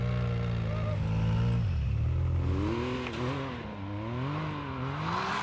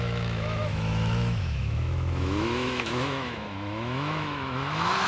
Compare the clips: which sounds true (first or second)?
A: first